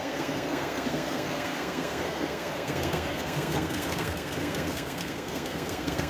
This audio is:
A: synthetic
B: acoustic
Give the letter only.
A